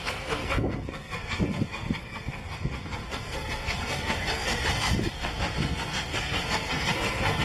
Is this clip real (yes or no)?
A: no